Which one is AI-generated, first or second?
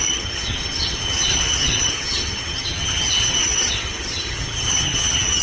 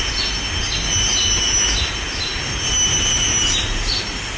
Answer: first